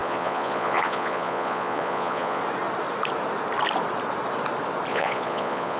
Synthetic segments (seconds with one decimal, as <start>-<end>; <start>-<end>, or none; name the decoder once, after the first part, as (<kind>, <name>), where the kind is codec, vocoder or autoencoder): 0.0-2.4 (vocoder, Vocos); 4.9-5.8